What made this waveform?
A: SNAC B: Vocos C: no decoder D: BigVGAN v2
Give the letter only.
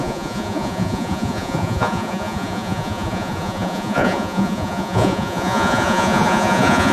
B